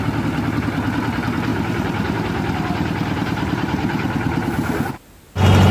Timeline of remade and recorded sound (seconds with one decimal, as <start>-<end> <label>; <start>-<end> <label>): 0.0-1.5 recorded; 1.5-4.9 remade; 4.9-5.7 recorded